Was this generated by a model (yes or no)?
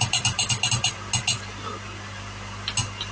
no